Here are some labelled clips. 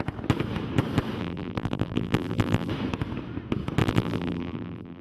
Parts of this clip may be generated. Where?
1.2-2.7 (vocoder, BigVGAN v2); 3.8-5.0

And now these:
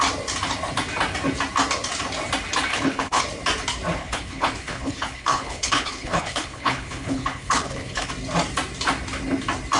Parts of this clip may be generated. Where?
2.7-3.2 (codec, HILCodec); 4.0-8.1